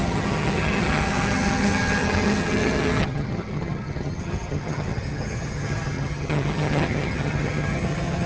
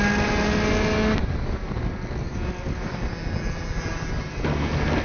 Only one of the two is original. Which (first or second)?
second